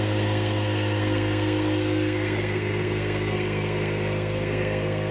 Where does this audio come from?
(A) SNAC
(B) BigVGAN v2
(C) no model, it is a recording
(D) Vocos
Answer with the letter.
A